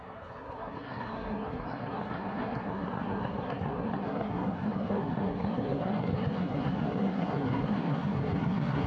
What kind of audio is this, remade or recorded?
remade